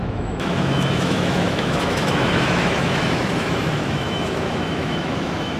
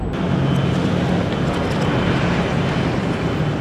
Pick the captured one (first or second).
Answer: second